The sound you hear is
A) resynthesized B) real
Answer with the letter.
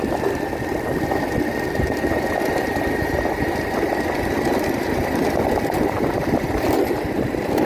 B